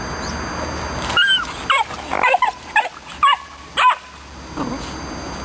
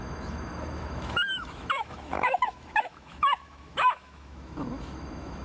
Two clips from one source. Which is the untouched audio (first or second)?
first